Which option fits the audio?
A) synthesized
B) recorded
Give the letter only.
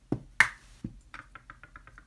B